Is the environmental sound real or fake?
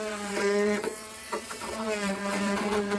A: fake